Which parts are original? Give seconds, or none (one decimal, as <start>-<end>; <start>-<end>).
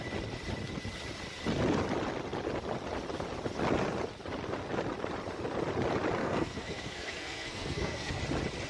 0.0-6.2; 8.2-8.7